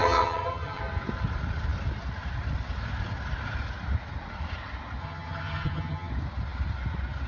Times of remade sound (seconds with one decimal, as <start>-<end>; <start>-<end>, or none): 0.0-0.8; 5.0-6.1